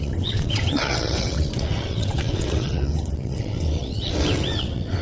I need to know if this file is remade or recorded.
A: remade